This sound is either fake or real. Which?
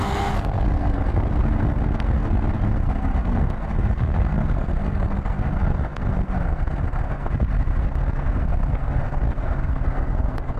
fake